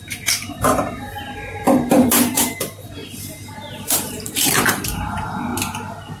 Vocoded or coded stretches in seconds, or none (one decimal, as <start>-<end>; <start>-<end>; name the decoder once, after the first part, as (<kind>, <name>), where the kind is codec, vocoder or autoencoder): 0.0-5.5 (vocoder, BigVGAN v2)